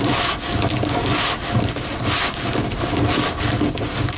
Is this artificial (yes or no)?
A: no